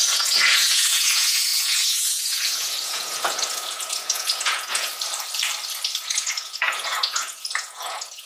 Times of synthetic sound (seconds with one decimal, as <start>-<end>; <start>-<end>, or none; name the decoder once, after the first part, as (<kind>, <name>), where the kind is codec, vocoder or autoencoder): 0.0-4.9 (vocoder, Vocos); 6.0-8.3